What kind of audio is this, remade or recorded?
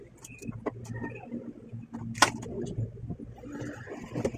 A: recorded